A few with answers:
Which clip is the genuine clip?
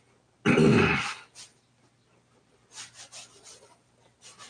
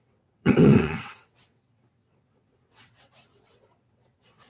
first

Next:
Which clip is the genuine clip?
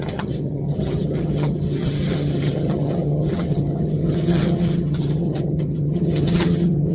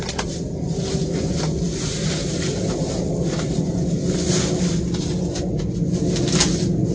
second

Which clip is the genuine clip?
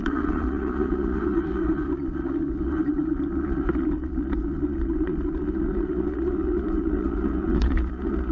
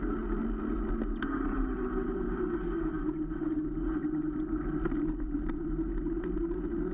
second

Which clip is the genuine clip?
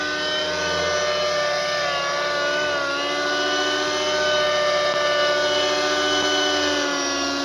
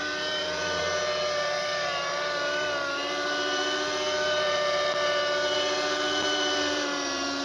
first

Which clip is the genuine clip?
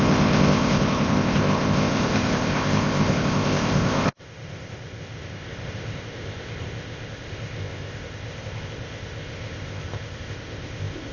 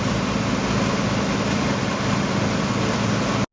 second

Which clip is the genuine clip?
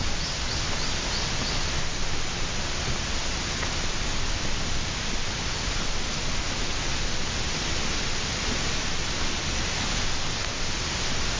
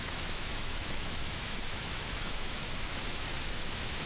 first